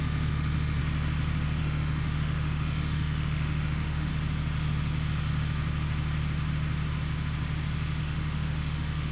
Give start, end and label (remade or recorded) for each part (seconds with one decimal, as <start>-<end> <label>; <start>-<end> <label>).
0.0-0.8 remade; 0.8-1.6 recorded; 1.6-4.1 remade; 4.1-8.0 recorded; 8.0-9.1 remade